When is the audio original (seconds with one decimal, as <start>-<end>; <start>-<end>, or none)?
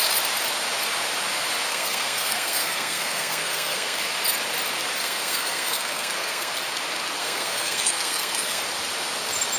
0.0-1.7; 4.0-5.0; 6.5-7.2; 8.6-9.6